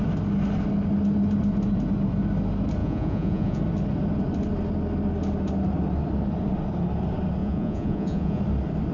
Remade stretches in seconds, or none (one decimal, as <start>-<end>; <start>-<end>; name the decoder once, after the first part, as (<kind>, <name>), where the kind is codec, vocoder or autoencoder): 2.8-3.6 (vocoder, Vocos); 7.4-8.4